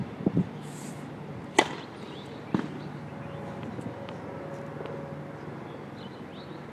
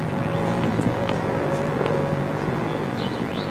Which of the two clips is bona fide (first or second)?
first